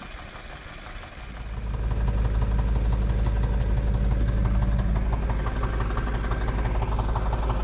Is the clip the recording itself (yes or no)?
yes